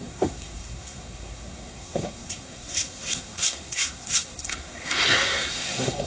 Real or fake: fake